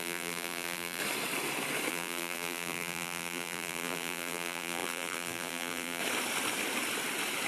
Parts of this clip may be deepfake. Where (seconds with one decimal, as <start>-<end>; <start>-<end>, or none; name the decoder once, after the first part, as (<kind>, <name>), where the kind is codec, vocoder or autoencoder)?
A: 0.0-1.0 (vocoder, BigVGAN v2); 1.9-6.0